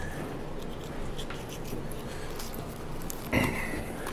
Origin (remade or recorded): recorded